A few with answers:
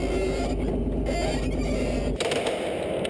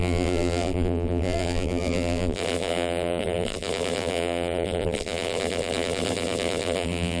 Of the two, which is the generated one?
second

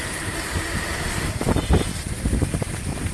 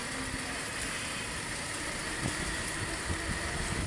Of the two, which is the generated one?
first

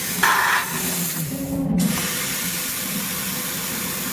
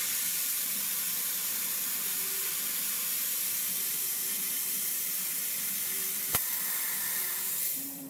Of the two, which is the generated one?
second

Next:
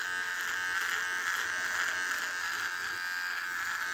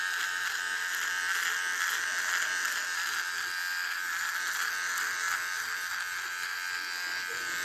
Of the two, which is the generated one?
second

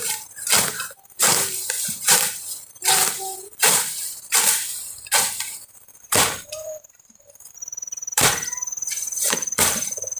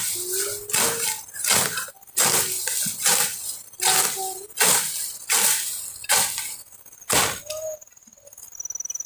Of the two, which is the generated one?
first